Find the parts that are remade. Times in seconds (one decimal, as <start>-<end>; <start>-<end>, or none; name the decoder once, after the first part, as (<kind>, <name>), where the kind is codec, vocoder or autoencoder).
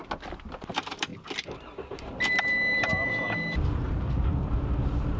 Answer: 0.7-1.1 (vocoder, BigVGAN v2); 2.4-5.2